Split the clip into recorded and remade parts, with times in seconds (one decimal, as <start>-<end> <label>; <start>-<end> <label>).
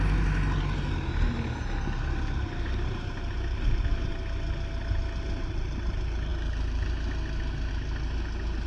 0.0-8.7 recorded